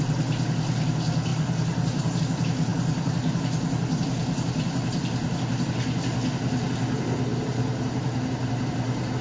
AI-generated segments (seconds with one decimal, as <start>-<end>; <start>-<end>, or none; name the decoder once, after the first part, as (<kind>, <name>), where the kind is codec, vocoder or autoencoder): 1.3-2.2 (vocoder, BigVGAN v2); 7.3-8.5